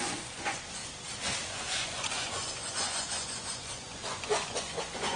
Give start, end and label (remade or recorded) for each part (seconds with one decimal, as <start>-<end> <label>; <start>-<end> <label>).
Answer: 0.0-0.8 remade; 0.8-1.5 recorded; 1.5-5.2 remade